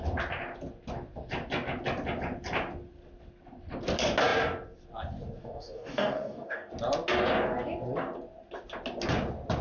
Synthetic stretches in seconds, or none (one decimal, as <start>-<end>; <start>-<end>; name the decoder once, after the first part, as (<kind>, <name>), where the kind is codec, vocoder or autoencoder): 5.4-6.7 (codec, DAC)